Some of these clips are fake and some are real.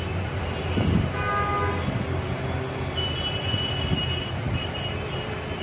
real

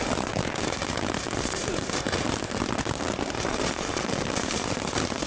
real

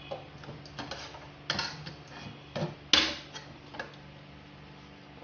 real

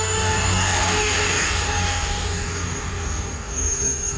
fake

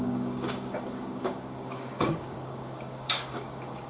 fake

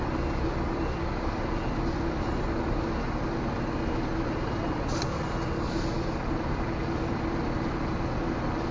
real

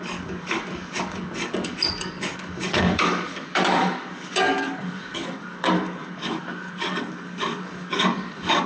fake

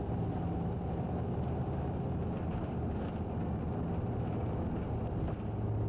real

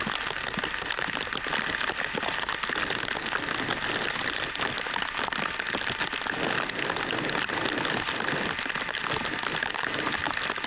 real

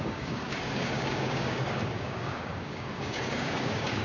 fake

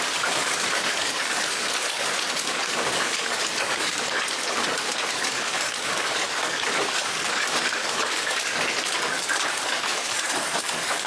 fake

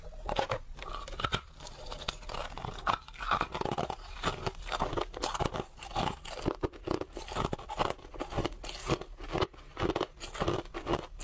real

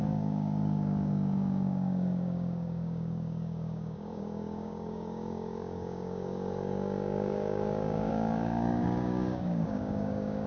fake